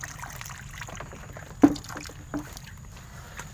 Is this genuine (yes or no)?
yes